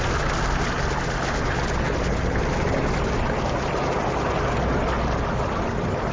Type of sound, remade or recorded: recorded